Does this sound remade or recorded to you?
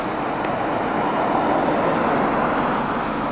recorded